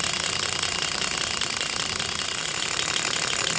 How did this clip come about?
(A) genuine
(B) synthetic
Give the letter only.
B